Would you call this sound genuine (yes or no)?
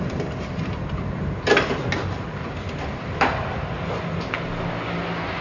yes